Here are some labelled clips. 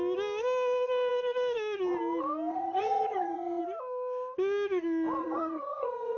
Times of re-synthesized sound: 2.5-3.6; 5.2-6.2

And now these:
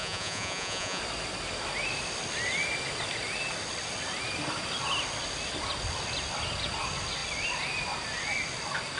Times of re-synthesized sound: 0.0-1.0

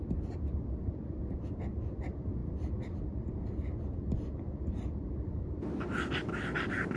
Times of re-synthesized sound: none

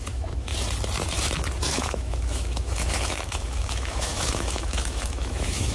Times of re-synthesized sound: 0.0-0.5; 1.6-5.7

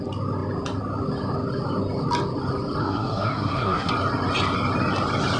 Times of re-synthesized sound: 2.8-3.9

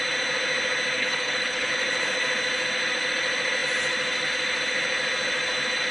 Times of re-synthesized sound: 1.0-1.7

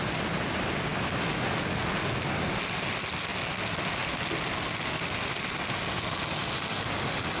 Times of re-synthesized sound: none